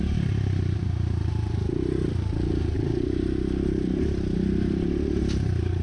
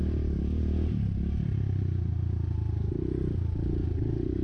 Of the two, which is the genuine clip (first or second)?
second